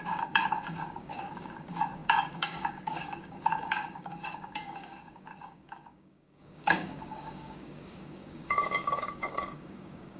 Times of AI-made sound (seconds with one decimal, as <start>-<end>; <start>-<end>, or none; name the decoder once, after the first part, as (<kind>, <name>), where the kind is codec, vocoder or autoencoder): 0.0-10.2 (codec, DAC)